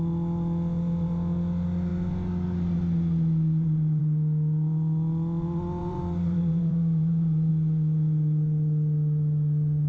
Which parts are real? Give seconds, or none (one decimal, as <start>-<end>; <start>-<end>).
0.0-5.8; 7.5-9.9